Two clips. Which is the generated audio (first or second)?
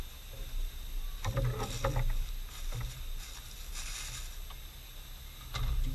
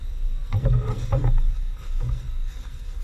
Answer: second